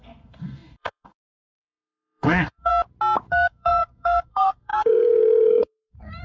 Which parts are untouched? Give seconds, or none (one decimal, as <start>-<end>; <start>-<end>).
2.7-3.3